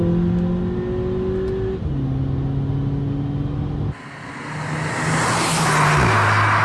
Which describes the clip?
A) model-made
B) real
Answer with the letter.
B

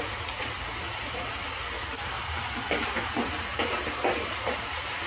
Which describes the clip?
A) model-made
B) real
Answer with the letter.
B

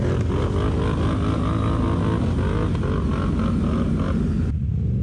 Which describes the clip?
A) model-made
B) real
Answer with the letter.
B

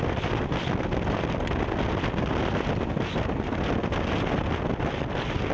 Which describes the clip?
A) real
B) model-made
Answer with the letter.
A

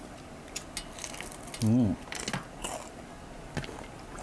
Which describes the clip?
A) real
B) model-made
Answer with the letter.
A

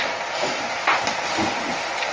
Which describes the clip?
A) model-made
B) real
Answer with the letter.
B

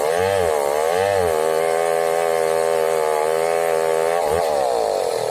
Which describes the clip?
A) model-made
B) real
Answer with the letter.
B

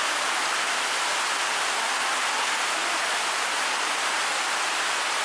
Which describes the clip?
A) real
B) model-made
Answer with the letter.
A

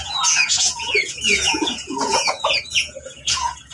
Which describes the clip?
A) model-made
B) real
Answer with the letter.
A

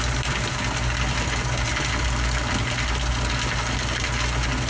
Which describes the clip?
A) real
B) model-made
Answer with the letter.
A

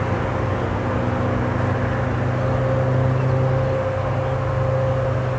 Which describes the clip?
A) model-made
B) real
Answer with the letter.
B